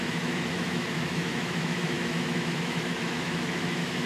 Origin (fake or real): fake